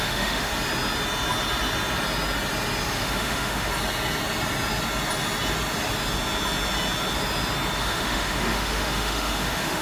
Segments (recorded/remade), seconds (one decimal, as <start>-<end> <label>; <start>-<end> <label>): 0.0-0.5 remade; 0.5-3.0 recorded; 3.0-3.7 remade; 3.7-7.8 recorded; 7.8-9.8 remade